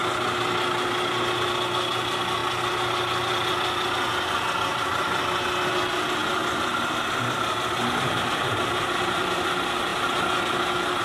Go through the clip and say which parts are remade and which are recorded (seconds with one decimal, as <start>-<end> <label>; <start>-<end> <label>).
0.0-6.2 recorded; 6.2-9.5 remade; 9.5-11.0 recorded